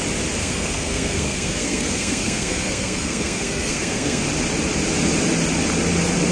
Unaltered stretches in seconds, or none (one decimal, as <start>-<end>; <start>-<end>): 0.0-0.4; 4.2-6.3